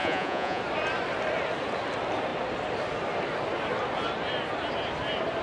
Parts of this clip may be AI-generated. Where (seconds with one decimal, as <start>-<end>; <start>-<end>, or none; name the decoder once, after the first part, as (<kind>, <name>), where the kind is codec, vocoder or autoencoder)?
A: 0.0-0.6 (vocoder, Vocos)